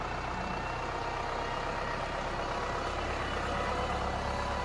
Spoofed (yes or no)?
no